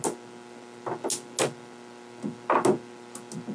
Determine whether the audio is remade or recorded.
recorded